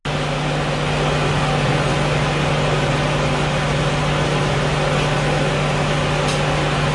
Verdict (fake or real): real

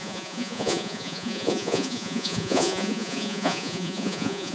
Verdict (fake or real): fake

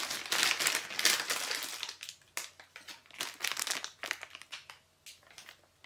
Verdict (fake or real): real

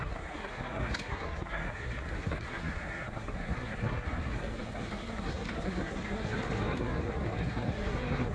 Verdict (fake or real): fake